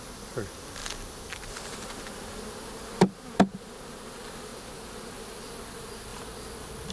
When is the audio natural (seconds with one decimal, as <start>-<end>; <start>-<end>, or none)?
0.0-4.5; 5.2-6.9